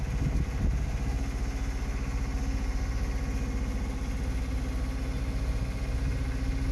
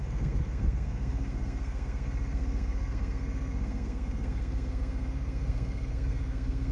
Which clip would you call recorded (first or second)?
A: first